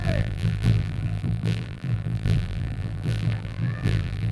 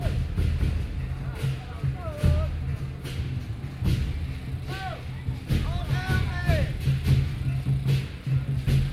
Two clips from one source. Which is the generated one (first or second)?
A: first